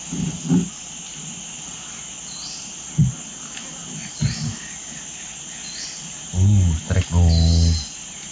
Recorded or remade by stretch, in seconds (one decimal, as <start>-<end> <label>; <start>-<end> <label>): 0.0-8.3 recorded